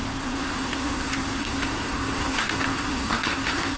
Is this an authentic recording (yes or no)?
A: no